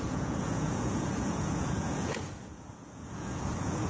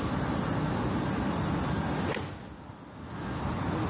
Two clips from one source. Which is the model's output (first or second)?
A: first